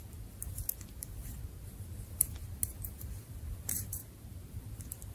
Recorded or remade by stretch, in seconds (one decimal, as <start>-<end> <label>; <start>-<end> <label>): 0.0-2.4 remade; 2.4-3.2 recorded; 3.2-5.1 remade